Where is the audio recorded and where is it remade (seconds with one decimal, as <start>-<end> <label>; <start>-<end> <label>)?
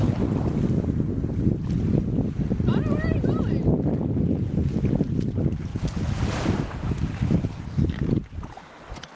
0.0-5.7 recorded; 5.7-7.6 remade; 7.6-9.2 recorded